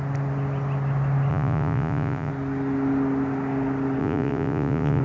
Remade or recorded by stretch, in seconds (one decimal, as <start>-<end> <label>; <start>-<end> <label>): 0.0-1.3 recorded; 1.3-2.3 remade; 2.3-4.0 recorded; 4.0-5.0 remade